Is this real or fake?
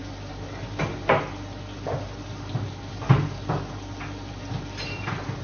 real